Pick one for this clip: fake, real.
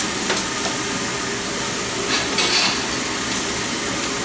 real